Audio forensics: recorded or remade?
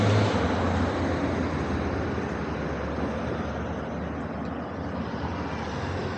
recorded